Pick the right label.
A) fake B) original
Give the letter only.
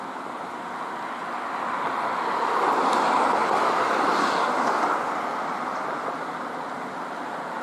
B